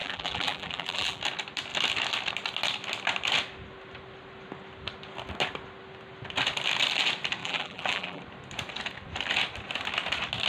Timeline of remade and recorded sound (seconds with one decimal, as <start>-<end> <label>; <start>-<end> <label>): 0.0-1.2 remade; 1.2-7.4 recorded; 7.4-8.2 remade; 8.2-10.5 recorded